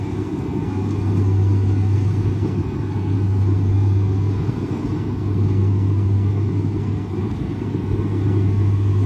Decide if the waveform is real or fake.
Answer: fake